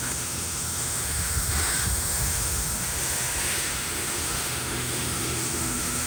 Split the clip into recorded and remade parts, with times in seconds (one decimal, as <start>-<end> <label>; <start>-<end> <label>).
0.0-6.1 remade